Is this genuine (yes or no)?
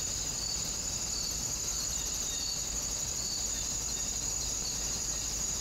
no